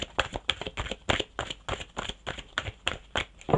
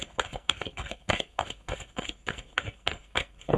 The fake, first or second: second